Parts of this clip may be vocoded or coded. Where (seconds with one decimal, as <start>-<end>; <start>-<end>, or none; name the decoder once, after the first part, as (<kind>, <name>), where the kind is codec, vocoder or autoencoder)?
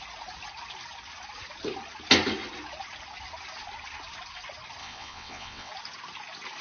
4.8-5.7 (vocoder, WaveNeXt)